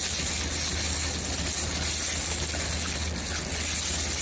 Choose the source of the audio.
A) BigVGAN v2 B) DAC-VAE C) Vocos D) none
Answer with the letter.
D